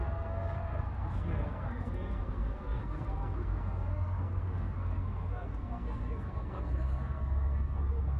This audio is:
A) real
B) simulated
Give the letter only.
B